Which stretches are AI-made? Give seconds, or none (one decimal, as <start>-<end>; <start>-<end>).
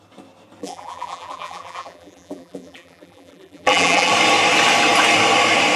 0.6-4.1